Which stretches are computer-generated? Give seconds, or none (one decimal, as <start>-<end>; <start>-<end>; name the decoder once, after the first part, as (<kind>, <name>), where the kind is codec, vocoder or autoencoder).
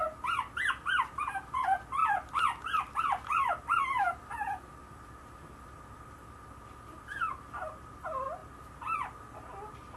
none